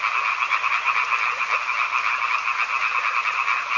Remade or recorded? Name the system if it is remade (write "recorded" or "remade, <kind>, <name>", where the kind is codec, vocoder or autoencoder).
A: recorded